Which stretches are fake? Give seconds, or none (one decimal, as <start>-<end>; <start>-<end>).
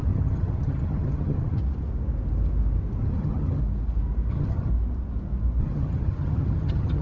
0.0-1.6; 3.0-3.6; 4.3-4.7; 5.6-7.0